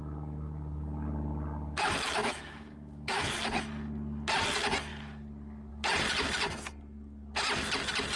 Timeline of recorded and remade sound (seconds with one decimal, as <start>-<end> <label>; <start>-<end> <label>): 0.0-2.2 recorded; 2.2-3.3 remade; 3.3-8.2 recorded